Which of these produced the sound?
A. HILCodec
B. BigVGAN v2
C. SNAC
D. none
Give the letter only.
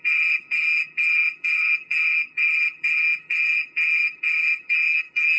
A